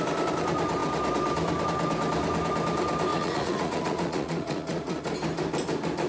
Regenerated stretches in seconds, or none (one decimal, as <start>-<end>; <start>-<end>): 3.1-5.0